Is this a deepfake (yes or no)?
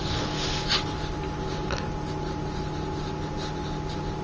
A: no